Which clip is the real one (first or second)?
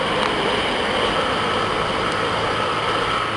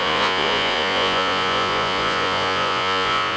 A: first